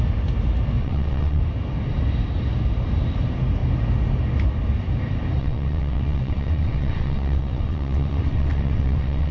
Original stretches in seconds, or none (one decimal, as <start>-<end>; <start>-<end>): 0.0-0.8; 1.4-5.4